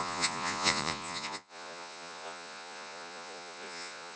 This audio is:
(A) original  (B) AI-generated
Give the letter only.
B